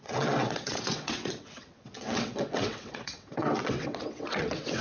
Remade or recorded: remade